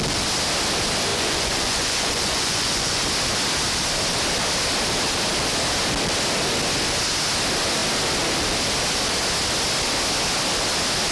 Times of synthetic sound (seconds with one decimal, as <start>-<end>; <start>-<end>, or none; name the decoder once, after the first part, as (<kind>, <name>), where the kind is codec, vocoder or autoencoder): 1.1-3.0 (vocoder, Vocos)